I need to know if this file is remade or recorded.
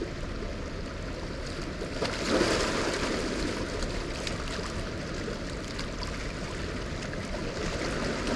recorded